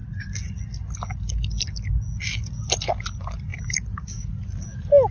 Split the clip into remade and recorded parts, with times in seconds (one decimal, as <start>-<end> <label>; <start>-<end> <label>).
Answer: 0.0-3.5 recorded; 3.5-4.3 remade; 4.3-5.1 recorded